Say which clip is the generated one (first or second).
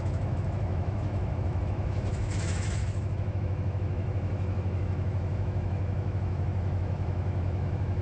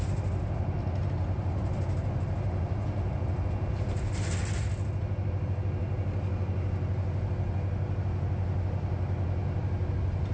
first